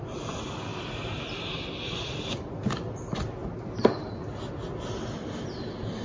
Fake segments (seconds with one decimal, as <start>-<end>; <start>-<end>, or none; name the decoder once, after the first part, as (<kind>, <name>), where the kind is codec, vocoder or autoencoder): 0.7-2.7 (vocoder, BigVGAN v2); 3.4-4.4